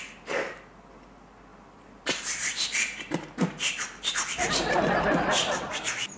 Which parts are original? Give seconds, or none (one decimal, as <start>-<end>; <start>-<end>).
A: 0.0-6.2